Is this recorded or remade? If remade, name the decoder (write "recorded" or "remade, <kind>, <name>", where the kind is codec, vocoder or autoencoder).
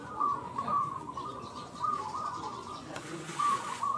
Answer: remade, vocoder, Vocos